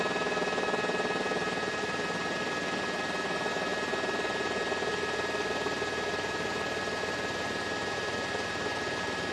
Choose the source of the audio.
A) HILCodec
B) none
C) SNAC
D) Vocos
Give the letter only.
B